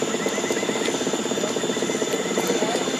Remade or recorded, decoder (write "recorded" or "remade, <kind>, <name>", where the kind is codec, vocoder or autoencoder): recorded